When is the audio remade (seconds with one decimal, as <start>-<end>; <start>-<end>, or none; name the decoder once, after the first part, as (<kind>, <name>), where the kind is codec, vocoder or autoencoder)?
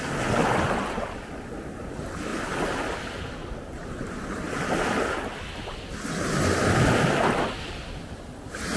none